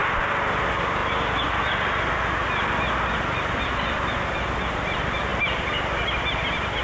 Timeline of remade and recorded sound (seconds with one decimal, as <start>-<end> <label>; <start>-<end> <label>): 0.0-0.6 remade; 0.6-6.8 recorded

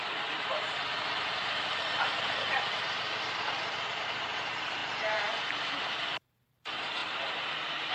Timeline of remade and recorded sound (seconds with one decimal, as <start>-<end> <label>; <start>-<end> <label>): 0.0-7.9 remade

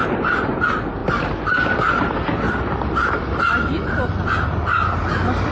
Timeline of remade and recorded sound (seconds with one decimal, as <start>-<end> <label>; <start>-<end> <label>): 0.0-0.6 remade; 0.6-5.5 recorded